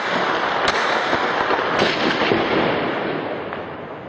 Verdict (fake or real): real